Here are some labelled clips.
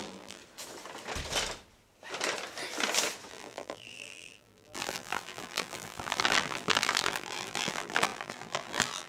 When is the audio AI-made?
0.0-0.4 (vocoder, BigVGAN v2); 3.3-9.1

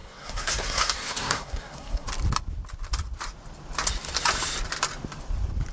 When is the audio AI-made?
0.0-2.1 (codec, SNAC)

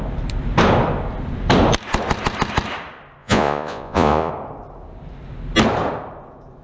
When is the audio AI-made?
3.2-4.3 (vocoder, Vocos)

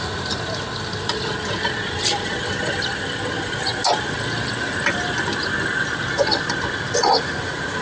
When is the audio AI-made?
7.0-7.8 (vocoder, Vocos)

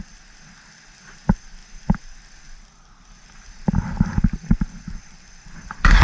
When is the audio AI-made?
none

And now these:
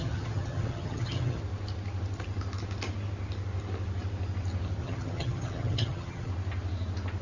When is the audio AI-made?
0.0-1.4 (vocoder, HiFi-GAN); 4.8-6.3